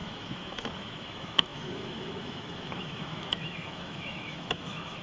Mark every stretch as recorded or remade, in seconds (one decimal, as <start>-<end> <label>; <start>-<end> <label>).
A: 0.0-5.0 remade

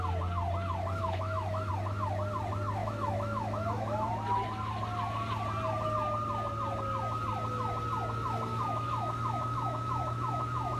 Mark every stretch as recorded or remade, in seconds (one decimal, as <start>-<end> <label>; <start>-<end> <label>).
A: 0.0-1.0 recorded; 1.0-1.7 remade; 1.7-2.8 recorded; 2.8-4.1 remade; 4.1-8.5 recorded; 8.5-10.8 remade